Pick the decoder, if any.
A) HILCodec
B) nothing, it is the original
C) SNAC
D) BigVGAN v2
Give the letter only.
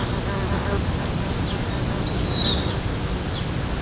B